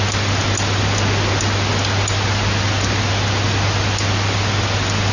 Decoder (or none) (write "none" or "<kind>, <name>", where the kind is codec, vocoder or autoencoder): none